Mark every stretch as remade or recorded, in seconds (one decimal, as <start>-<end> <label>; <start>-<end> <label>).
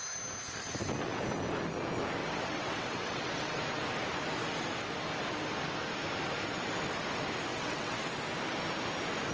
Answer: 0.0-2.2 recorded; 2.2-3.6 remade; 3.6-7.5 recorded; 7.5-8.1 remade; 8.1-9.3 recorded